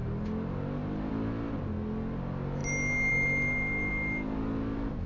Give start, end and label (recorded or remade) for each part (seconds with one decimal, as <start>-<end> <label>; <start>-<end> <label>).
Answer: 0.0-5.1 recorded